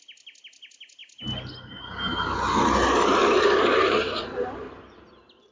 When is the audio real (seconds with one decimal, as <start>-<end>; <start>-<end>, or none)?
0.0-5.5